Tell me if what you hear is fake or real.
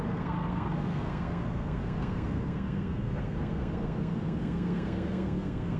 fake